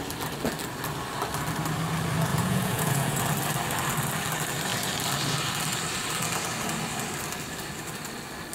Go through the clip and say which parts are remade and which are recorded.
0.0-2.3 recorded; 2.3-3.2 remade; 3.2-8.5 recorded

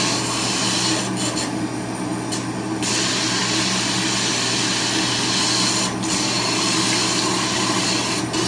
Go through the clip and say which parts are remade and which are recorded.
0.0-8.5 recorded

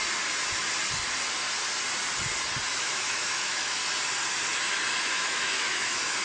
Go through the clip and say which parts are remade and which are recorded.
0.0-2.7 recorded; 2.7-3.8 remade; 3.8-5.0 recorded; 5.0-6.2 remade

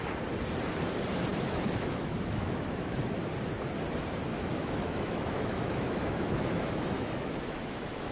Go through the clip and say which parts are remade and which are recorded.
0.0-1.3 recorded; 1.3-3.2 remade; 3.2-4.3 recorded; 4.3-8.1 remade

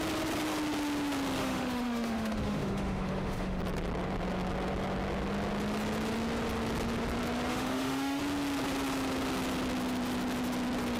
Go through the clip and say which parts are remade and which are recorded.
0.0-1.4 recorded; 1.4-3.6 remade; 3.6-7.5 recorded; 7.5-8.2 remade; 8.2-11.0 recorded

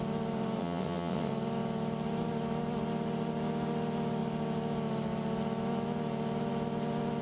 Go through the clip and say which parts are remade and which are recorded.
0.0-0.6 recorded; 0.6-1.3 remade; 1.3-7.2 recorded

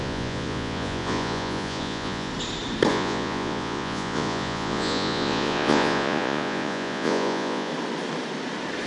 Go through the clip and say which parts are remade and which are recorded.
0.0-2.3 remade; 2.3-2.9 recorded; 2.9-7.7 remade; 7.7-8.9 recorded